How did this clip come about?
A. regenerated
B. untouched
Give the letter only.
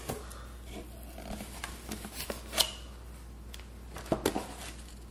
B